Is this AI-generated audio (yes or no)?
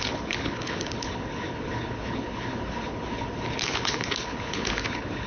yes